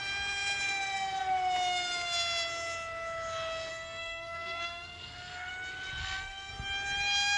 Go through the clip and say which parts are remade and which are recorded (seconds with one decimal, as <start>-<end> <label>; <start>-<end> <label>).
0.0-3.7 recorded; 3.7-5.5 remade; 5.5-6.0 recorded; 6.0-6.5 remade; 6.5-7.4 recorded